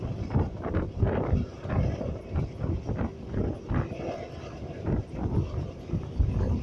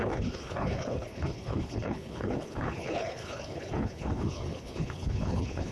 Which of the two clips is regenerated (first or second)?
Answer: second